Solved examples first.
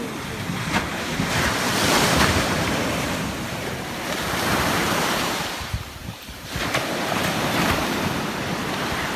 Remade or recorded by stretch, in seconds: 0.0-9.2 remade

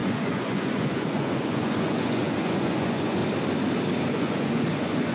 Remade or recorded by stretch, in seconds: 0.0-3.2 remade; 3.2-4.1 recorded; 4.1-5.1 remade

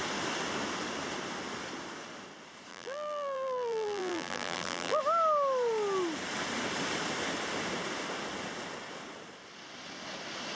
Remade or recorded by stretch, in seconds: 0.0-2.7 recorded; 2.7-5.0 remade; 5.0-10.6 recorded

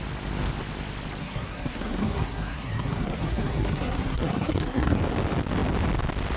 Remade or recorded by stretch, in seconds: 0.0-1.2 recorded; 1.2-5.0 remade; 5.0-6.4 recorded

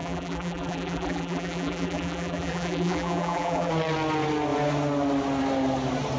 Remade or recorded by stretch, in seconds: 0.0-3.7 remade; 3.7-6.2 recorded

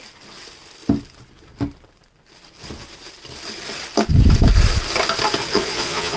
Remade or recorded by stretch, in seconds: 0.0-5.5 recorded; 5.5-6.2 remade